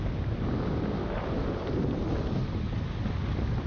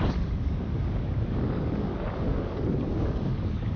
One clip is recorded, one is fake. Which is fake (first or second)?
second